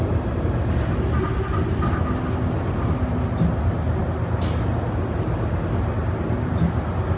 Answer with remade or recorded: recorded